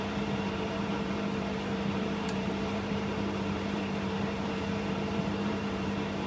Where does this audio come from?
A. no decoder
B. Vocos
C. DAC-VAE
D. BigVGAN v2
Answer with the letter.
D